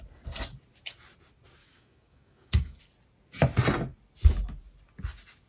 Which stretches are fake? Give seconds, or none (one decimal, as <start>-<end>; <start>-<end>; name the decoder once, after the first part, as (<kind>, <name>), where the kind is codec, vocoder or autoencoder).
1.6-2.8 (autoencoder, DAC-VAE)